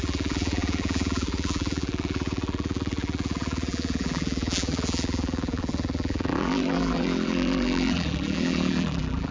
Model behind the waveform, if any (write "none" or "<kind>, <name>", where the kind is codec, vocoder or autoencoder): vocoder, BigVGAN v2